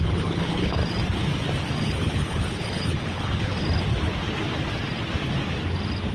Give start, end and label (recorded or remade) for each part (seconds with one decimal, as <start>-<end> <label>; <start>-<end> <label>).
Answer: 0.0-0.8 remade; 0.8-1.8 recorded; 1.8-3.5 remade; 3.5-6.1 recorded